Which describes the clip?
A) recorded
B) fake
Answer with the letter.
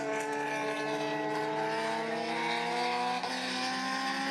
A